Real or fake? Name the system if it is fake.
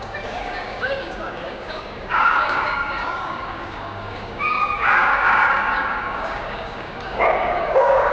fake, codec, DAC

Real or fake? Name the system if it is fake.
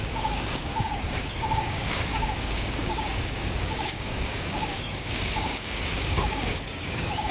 fake, codec, DAC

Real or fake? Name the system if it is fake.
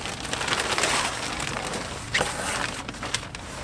real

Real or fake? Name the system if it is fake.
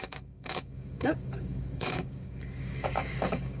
fake, codec, DAC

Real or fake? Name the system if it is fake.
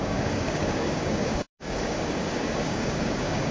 fake, codec, DAC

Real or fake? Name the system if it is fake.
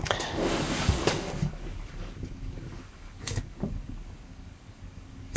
fake, codec, DAC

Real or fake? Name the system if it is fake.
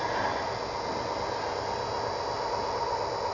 real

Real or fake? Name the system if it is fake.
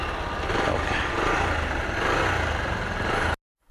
real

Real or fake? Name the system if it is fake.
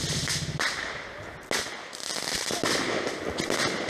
real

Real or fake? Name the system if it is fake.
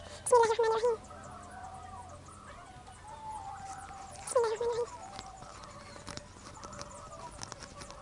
real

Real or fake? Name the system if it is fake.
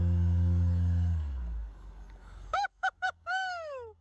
fake, codec, DAC